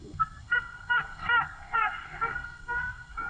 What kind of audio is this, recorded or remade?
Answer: remade